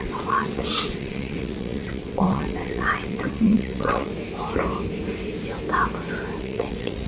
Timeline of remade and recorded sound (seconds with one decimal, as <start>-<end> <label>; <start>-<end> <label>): 0.0-4.1 remade; 4.1-6.4 recorded; 6.4-7.1 remade